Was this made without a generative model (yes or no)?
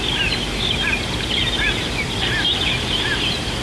yes